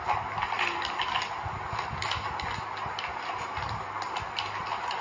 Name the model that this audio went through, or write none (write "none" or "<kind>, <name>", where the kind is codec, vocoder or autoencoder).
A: none